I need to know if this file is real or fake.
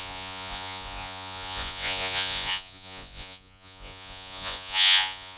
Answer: fake